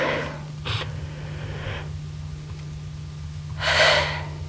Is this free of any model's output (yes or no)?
yes